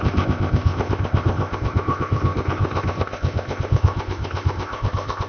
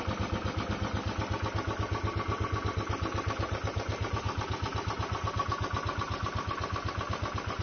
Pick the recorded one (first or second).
second